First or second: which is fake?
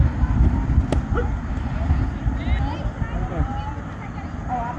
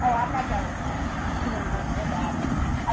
second